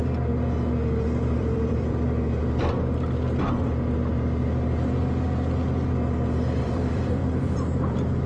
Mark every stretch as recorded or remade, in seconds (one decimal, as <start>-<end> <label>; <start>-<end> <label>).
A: 0.0-1.2 recorded; 1.2-2.4 remade; 2.4-6.6 recorded; 6.6-8.3 remade